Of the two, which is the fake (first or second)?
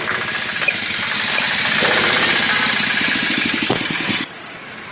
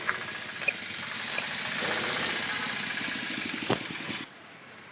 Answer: first